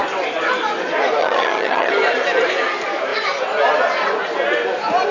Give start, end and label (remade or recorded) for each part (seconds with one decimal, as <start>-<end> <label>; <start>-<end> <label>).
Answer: 0.0-1.2 recorded; 1.2-1.9 remade; 1.9-5.1 recorded